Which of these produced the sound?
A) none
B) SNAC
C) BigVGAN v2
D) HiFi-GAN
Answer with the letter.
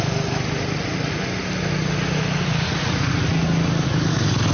A